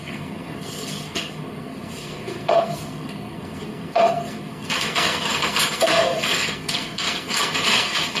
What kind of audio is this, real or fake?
fake